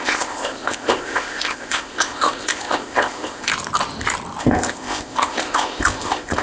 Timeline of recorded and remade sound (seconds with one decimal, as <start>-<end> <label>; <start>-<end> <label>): 0.0-3.5 remade; 3.5-4.4 recorded; 4.4-6.4 remade